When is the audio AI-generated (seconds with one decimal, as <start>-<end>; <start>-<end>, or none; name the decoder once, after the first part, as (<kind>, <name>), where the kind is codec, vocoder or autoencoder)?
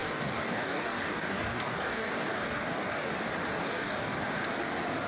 0.0-3.1 (codec, DAC); 3.6-4.2